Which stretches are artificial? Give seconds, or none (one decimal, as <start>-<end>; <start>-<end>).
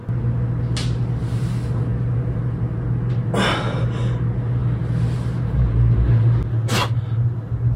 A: none